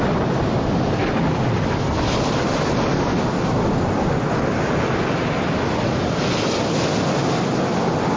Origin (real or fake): real